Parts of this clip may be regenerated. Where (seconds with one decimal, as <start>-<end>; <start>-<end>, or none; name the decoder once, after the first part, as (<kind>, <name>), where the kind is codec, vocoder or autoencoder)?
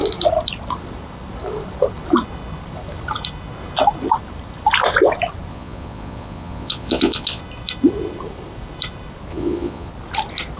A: 5.5-7.4 (vocoder, Vocos); 9.3-9.9